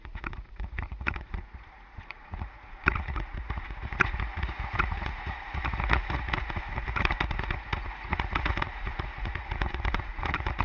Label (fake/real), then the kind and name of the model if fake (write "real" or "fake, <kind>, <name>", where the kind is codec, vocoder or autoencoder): fake, vocoder, Vocos